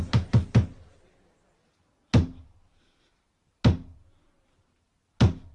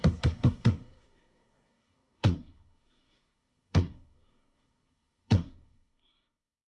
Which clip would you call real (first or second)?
first